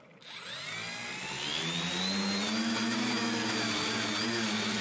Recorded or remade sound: recorded